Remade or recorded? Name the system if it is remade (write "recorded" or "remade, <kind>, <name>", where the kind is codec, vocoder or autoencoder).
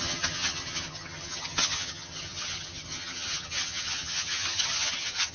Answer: remade, vocoder, HiFi-GAN